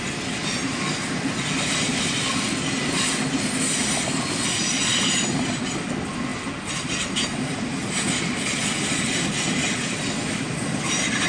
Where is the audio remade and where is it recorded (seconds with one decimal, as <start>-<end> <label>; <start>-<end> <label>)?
0.0-11.3 recorded